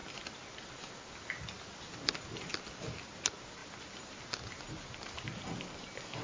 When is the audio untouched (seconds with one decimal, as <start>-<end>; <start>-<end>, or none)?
0.0-6.2